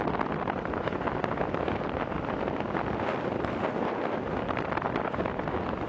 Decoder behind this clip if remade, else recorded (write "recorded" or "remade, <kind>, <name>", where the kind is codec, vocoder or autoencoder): recorded